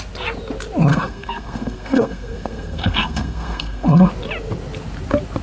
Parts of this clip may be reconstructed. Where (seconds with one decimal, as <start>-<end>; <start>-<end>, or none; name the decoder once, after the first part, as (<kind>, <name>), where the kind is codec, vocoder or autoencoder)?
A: 0.9-4.1 (codec, SNAC)